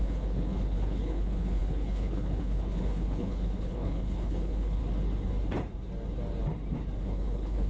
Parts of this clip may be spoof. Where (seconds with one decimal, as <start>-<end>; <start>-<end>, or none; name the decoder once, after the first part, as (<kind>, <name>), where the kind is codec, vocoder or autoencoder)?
0.0-4.8 (codec, HILCodec); 7.0-7.7